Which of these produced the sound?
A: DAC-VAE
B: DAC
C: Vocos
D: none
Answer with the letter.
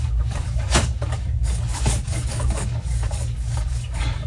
B